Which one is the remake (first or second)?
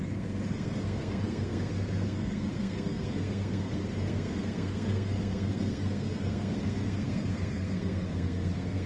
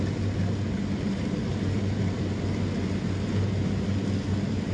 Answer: first